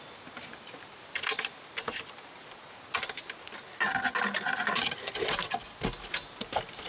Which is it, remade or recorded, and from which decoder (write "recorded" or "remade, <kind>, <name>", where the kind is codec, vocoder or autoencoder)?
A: recorded